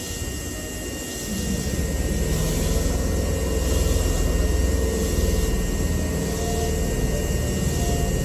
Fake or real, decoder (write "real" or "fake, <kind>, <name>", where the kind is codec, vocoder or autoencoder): real